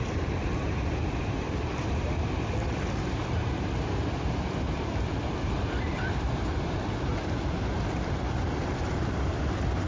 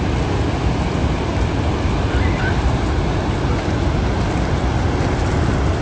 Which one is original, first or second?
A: second